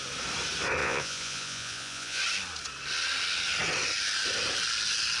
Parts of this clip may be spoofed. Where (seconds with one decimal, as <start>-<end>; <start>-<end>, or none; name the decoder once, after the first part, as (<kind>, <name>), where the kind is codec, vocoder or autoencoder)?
0.8-2.2 (vocoder, Vocos)